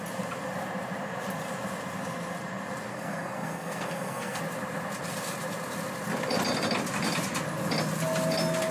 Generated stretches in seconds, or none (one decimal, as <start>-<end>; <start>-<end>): 2.9-4.4

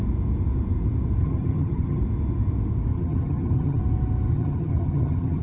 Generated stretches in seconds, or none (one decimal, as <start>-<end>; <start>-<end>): 1.2-2.0; 2.9-3.8; 4.3-5.4

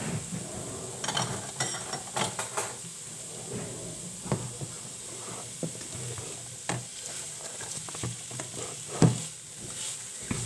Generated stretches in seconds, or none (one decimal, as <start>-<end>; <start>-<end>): 6.9-8.4

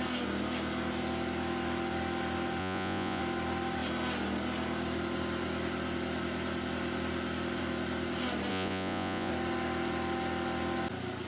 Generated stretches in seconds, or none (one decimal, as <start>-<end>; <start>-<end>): 2.6-3.2; 8.5-9.3

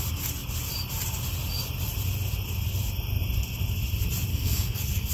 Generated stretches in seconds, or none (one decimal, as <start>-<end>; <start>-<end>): 4.3-5.1